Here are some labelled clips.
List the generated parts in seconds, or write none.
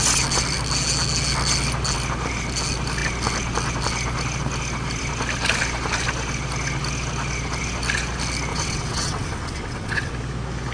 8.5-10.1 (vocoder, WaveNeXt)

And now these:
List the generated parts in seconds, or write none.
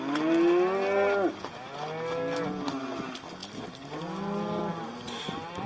none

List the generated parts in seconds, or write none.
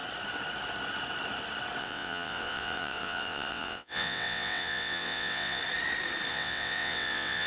1.8-5.6 (vocoder, WaveNeXt); 6.3-7.5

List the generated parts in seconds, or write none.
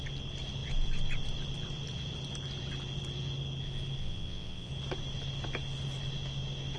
4.0-4.7 (vocoder, WaveNeXt)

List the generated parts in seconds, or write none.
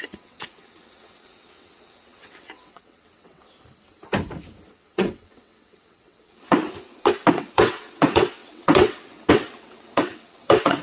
0.0-3.4 (vocoder, WaveNeXt); 4.7-6.6; 7.3-10.8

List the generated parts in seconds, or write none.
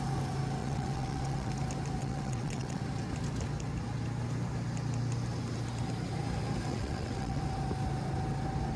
0.6-1.5 (vocoder, WaveNeXt); 2.0-2.8; 6.7-7.4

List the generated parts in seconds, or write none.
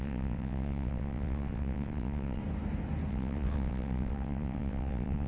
0.0-2.4 (vocoder, WaveNeXt); 3.1-5.3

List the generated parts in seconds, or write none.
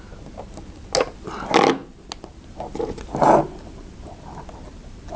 none